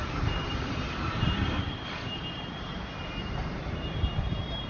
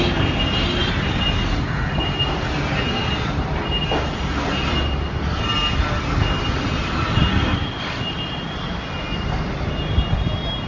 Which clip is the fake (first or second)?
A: first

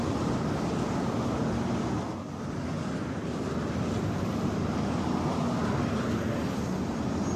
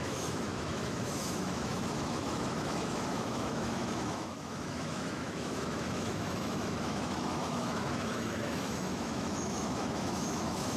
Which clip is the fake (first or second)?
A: second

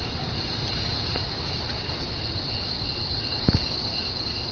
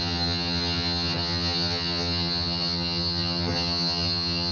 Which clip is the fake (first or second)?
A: second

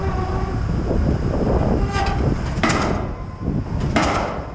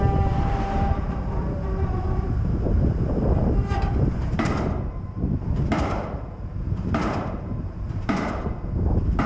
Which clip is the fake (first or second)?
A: second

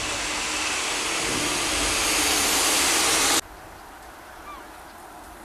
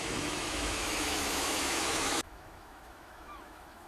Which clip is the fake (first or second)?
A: second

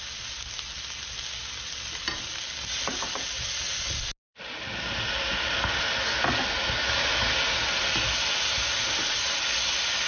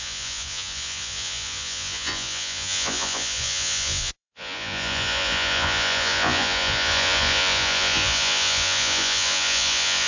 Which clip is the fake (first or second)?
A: second